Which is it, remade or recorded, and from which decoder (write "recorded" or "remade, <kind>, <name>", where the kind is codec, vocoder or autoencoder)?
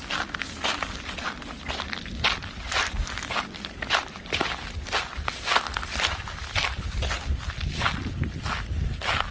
recorded